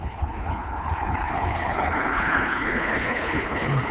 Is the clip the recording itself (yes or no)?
no